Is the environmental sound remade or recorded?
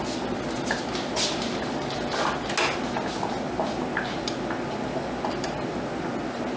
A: recorded